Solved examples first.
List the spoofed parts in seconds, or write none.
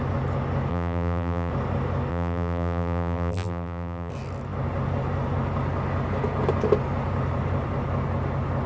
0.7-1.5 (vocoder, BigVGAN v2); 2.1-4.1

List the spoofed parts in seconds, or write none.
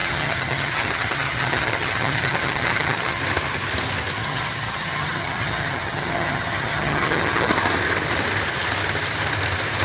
0.0-3.2 (vocoder, HiFi-GAN); 4.2-7.5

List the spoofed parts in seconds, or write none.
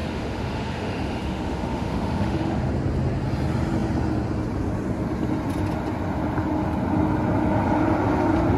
0.0-2.7 (autoencoder, DAC-VAE)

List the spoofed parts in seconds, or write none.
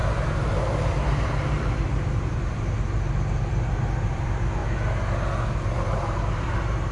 0.0-4.6 (vocoder, BigVGAN v2); 5.5-6.9